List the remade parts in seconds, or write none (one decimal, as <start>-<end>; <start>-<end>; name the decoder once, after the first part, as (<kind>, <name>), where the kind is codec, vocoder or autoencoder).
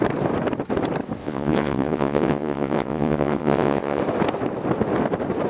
1.2-4.0 (vocoder, WaveNeXt)